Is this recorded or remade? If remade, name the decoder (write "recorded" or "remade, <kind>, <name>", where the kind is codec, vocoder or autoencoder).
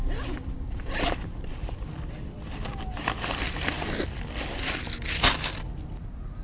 remade, vocoder, BigVGAN v2